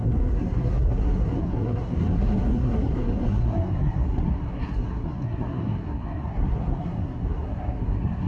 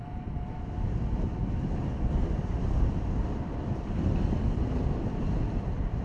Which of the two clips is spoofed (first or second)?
first